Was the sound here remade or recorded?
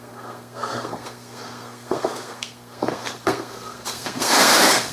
remade